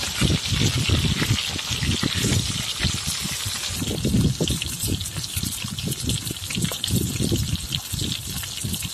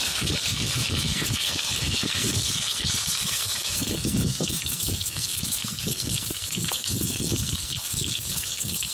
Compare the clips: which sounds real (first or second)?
first